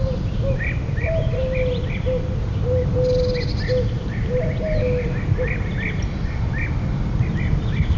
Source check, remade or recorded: recorded